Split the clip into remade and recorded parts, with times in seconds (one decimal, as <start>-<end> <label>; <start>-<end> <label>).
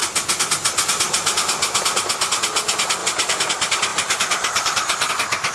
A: 0.0-3.0 recorded; 3.0-3.5 remade; 3.5-3.9 recorded; 3.9-5.1 remade; 5.1-5.5 recorded